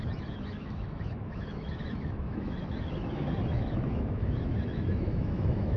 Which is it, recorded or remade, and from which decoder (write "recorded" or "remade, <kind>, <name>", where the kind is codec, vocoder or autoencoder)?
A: remade, autoencoder, DAC-VAE